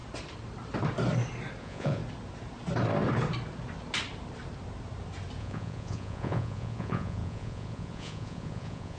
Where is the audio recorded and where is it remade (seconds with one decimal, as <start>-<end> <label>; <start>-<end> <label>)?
0.0-1.6 recorded; 1.6-2.0 remade; 2.0-5.4 recorded; 5.4-9.0 remade